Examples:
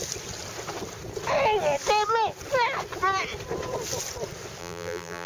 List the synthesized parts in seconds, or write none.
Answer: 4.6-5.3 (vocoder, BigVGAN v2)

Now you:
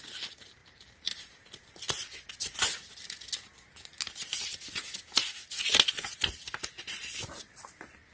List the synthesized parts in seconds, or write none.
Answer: none

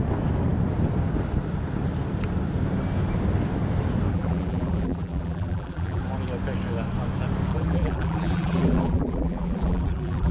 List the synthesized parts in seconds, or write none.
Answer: 4.1-6.0 (vocoder, BigVGAN v2); 7.5-10.3

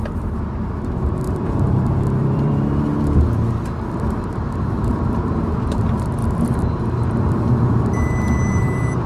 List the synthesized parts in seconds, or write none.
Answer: 0.0-2.9 (vocoder, BigVGAN v2); 4.1-9.1

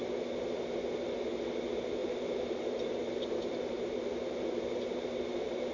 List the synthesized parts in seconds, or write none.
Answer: 2.0-5.7 (vocoder, BigVGAN v2)

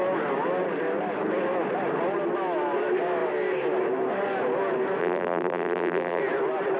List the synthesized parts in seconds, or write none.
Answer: 5.0-6.2 (vocoder, BigVGAN v2)